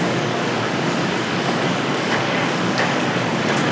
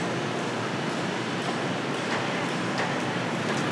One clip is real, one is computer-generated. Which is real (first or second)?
second